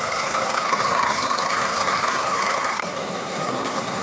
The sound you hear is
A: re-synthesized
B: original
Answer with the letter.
A